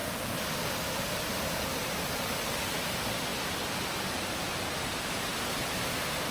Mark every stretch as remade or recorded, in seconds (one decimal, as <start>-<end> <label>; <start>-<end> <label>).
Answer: 0.0-2.5 recorded; 2.5-6.3 remade